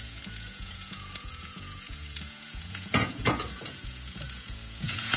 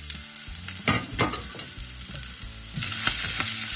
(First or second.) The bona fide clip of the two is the second